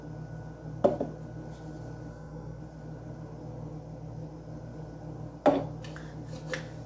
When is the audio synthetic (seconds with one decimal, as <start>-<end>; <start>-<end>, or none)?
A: 2.1-2.6